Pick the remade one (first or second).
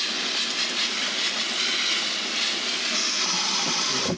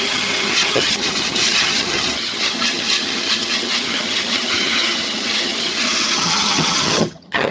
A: second